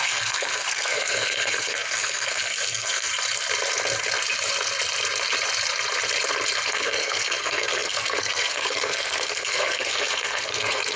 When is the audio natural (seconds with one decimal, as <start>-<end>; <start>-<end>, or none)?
3.1-6.7